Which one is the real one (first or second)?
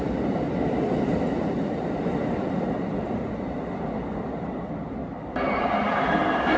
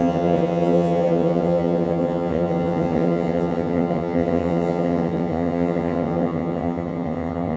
first